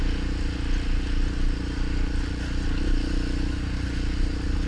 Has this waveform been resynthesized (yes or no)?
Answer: no